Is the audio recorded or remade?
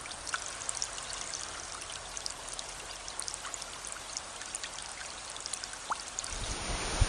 recorded